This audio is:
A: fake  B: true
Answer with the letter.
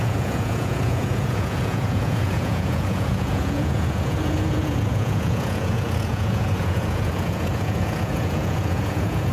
A